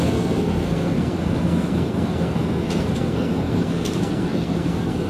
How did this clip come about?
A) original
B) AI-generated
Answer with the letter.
B